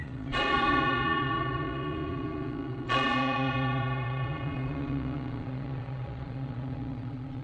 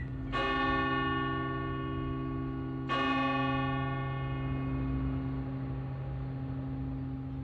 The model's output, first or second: first